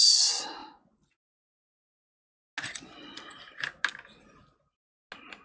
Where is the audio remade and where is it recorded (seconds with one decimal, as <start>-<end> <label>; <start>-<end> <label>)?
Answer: 0.0-5.4 recorded